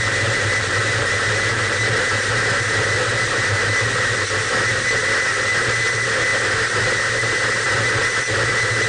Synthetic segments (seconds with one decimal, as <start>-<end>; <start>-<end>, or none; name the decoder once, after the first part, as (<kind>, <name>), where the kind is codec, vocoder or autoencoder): none